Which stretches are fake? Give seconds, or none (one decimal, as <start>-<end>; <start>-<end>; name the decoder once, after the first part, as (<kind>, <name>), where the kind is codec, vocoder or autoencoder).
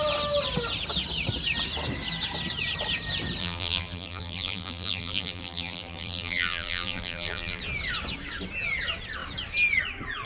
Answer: 3.4-7.6 (vocoder, BigVGAN v2)